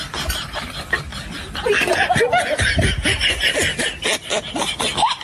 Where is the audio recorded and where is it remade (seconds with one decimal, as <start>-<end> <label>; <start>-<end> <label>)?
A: 0.0-5.2 recorded